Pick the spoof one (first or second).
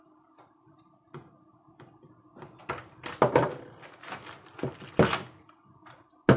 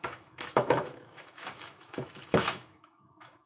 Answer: second